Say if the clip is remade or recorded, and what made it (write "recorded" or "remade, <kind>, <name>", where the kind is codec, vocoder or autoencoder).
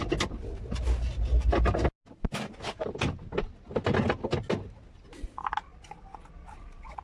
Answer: recorded